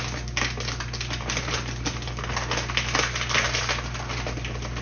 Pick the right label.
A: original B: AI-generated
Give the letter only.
A